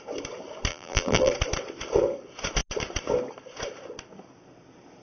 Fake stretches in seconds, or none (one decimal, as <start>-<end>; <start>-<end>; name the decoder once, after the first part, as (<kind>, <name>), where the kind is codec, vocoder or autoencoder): 0.7-1.3 (vocoder, BigVGAN v2)